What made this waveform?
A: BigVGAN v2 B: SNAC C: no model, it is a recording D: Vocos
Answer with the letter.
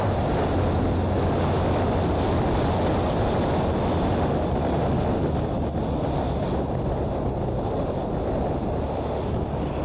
C